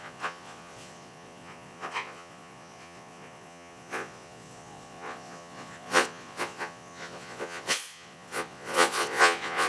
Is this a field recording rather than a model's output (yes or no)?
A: no